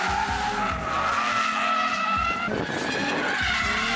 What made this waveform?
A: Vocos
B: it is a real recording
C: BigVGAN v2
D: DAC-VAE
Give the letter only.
B